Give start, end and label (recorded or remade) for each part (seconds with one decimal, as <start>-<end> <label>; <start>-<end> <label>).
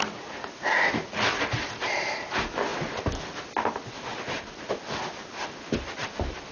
0.0-6.5 recorded